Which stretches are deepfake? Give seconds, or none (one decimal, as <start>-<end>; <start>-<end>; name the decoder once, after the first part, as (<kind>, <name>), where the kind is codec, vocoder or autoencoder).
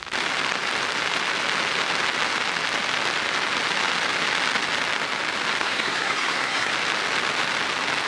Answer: 5.6-6.7 (codec, SNAC)